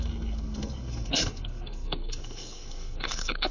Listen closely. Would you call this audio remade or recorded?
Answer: remade